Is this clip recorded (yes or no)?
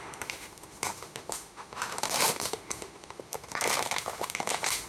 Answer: no